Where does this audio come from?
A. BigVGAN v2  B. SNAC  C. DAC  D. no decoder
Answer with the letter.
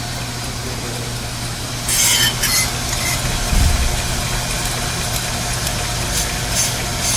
D